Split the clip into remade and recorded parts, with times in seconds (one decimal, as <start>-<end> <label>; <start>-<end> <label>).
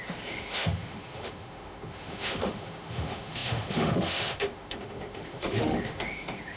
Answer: 0.0-6.6 remade